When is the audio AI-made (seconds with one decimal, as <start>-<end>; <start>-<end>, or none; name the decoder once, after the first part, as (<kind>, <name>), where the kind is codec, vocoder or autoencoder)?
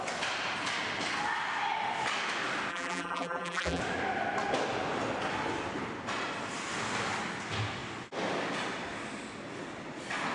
2.7-3.8 (vocoder, BigVGAN v2)